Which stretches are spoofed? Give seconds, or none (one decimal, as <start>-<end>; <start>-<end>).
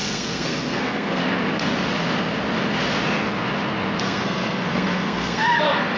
0.0-1.2; 4.0-6.0